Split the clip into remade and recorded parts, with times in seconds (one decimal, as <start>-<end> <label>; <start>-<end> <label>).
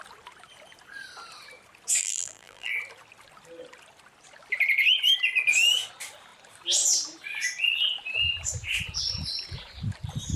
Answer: 0.0-2.0 recorded; 2.0-2.7 remade; 2.7-10.4 recorded